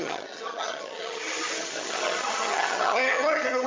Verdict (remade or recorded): remade